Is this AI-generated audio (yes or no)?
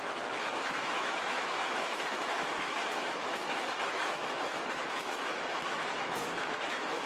yes